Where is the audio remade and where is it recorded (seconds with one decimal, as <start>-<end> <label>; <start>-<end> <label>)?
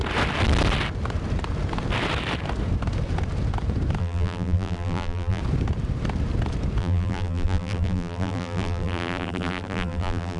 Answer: 0.0-4.0 recorded; 4.0-5.4 remade; 5.4-6.8 recorded; 6.8-10.4 remade